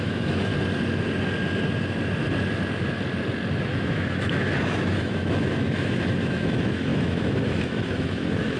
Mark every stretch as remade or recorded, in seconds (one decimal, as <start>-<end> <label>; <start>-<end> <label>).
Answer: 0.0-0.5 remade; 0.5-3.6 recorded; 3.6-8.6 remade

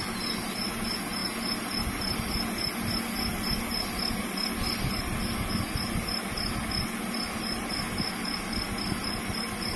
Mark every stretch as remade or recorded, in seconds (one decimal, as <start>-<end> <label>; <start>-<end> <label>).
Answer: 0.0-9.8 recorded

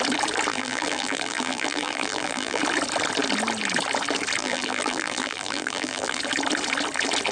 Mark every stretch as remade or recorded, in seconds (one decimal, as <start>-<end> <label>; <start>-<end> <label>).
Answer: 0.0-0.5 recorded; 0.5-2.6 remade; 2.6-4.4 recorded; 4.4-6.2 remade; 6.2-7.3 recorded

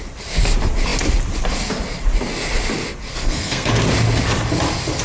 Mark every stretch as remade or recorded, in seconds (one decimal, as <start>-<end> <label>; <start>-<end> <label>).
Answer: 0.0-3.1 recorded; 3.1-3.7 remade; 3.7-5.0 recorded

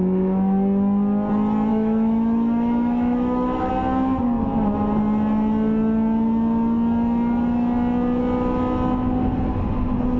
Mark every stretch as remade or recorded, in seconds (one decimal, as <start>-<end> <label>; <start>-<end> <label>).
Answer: 0.0-1.7 recorded; 1.7-3.7 remade; 3.7-10.2 recorded